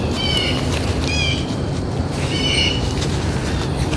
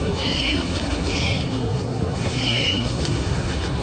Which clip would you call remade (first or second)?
second